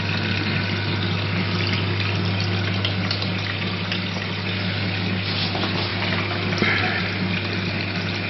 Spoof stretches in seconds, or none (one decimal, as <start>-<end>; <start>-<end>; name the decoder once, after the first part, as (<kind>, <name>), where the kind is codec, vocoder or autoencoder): none